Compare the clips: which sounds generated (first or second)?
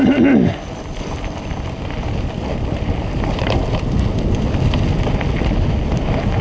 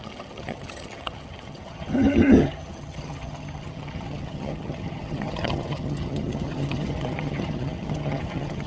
second